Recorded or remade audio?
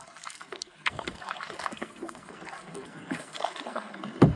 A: remade